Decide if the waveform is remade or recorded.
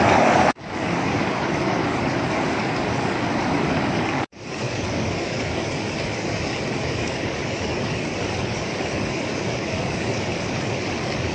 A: remade